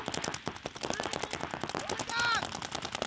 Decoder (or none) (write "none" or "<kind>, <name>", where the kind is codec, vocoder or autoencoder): none